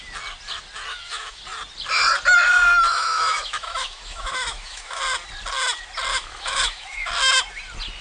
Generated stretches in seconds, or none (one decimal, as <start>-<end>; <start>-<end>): 0.9-1.4; 2.9-5.0; 6.1-7.1